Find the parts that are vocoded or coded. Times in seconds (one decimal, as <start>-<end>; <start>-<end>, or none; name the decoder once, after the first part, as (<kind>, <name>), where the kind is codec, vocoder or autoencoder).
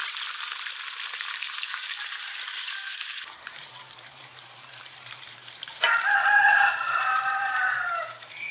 1.1-8.5 (vocoder, BigVGAN v2)